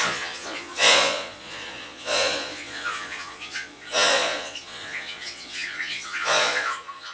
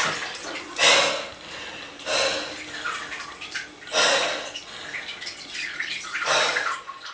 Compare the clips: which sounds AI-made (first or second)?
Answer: first